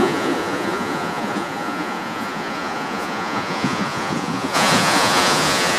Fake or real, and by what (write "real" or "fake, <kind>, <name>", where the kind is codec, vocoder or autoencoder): fake, vocoder, Vocos